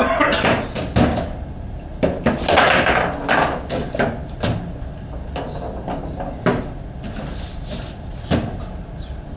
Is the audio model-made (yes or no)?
no